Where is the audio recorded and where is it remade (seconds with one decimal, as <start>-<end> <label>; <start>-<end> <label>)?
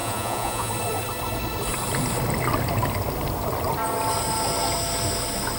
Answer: 0.0-0.7 remade; 0.7-5.6 recorded